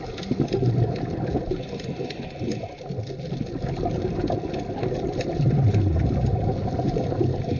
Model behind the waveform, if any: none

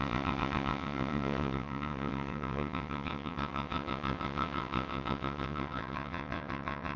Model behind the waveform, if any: vocoder, WaveNeXt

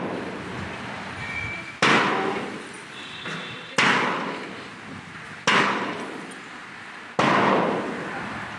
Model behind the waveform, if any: none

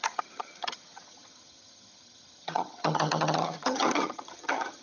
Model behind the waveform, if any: vocoder, HiFi-GAN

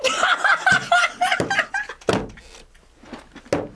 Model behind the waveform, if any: none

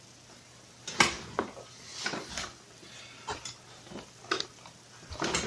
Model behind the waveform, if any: none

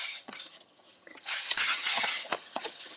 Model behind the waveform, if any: vocoder, HiFi-GAN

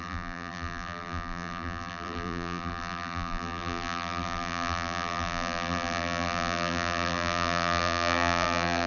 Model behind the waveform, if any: vocoder, BigVGAN v2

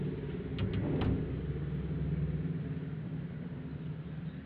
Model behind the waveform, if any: none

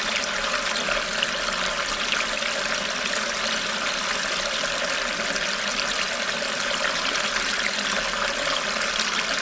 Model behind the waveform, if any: none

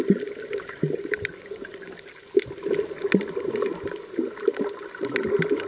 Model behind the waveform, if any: none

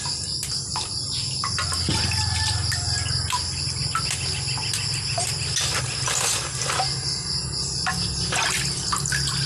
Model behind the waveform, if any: none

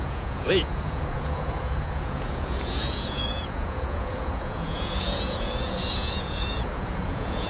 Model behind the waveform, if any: vocoder, Vocos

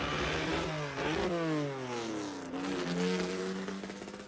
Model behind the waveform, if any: none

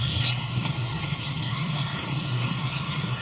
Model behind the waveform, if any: codec, SNAC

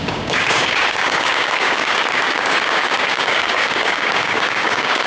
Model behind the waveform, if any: codec, DAC